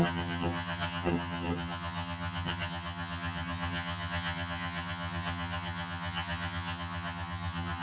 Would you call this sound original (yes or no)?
no